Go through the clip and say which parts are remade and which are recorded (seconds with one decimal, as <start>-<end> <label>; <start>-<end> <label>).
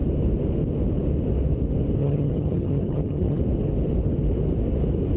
0.0-2.0 recorded; 2.0-3.4 remade; 3.4-5.2 recorded